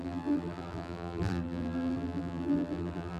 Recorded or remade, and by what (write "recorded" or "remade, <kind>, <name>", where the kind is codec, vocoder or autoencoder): remade, vocoder, BigVGAN v2